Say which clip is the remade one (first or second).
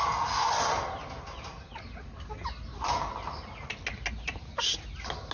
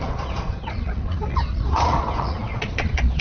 second